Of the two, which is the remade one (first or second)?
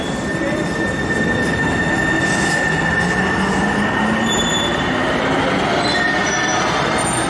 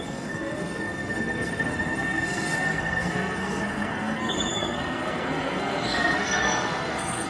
second